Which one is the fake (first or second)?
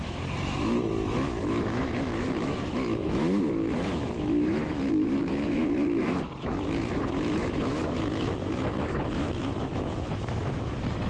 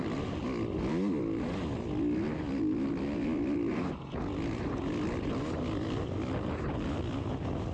first